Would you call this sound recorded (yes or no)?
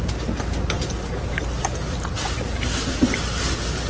yes